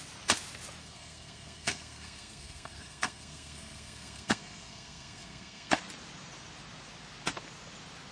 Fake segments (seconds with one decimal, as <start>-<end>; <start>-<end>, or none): 0.8-5.7